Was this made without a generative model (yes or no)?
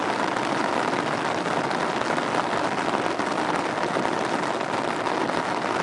yes